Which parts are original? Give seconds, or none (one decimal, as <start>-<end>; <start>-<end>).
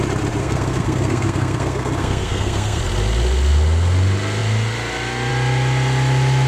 0.0-0.4; 2.8-6.5